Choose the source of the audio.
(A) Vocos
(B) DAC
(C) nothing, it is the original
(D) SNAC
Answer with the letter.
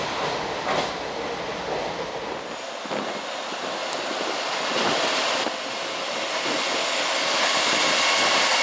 C